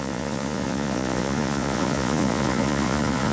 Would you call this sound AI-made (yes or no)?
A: yes